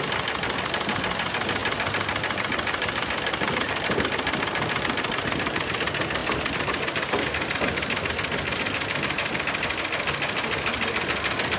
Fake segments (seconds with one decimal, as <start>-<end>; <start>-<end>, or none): 1.6-5.8; 6.2-7.1